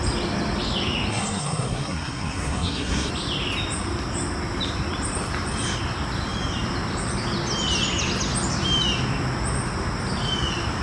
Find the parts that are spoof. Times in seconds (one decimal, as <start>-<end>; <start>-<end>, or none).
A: 1.1-3.1